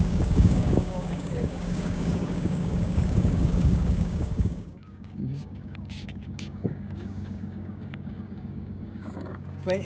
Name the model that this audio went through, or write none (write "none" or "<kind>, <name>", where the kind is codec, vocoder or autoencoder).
codec, DAC